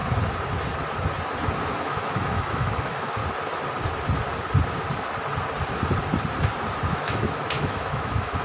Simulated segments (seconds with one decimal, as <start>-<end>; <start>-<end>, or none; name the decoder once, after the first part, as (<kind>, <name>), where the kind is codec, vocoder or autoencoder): 1.7-3.2 (autoencoder, DAC-VAE); 6.9-8.4